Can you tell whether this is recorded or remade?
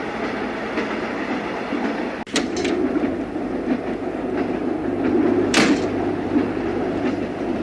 recorded